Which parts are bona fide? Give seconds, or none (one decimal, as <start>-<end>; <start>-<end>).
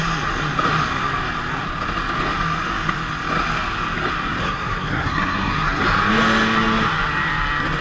0.0-4.4; 5.8-7.8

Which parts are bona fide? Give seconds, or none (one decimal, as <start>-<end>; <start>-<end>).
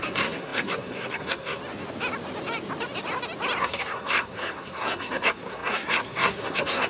1.6-3.6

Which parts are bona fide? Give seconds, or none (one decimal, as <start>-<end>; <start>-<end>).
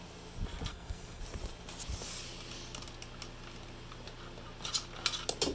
0.0-0.7; 1.2-5.5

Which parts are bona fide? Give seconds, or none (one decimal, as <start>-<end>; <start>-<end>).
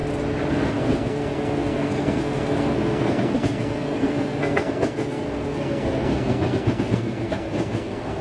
0.0-0.5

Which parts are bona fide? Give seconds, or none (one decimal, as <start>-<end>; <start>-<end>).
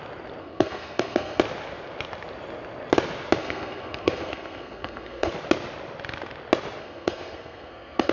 0.0-0.4; 1.4-3.4; 5.3-6.8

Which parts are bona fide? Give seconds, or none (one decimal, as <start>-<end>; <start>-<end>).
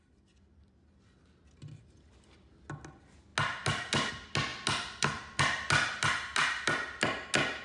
0.0-7.6